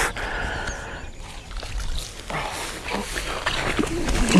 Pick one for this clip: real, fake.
real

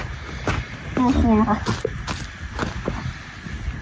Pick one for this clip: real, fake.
real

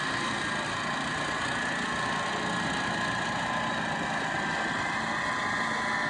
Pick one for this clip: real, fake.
real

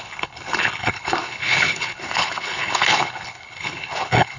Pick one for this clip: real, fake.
fake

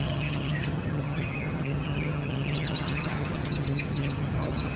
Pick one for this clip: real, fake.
fake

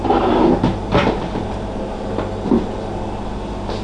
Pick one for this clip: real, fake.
real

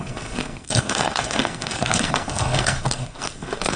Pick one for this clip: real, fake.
fake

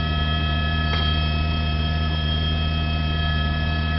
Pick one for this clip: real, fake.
real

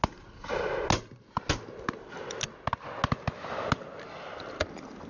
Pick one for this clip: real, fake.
real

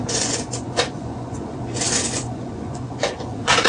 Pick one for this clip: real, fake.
fake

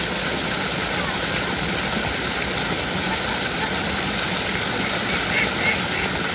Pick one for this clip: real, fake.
real